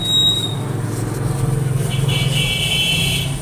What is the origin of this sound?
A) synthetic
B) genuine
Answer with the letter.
B